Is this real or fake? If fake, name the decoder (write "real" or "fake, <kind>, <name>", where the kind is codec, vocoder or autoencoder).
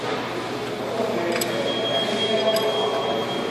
real